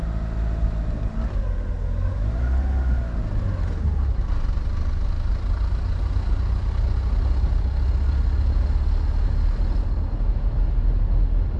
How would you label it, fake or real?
real